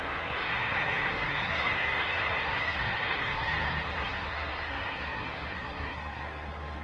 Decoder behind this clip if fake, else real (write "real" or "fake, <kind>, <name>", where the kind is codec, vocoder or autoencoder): fake, codec, SNAC